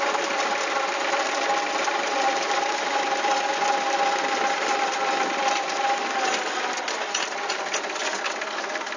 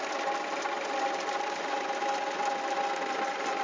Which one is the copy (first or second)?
first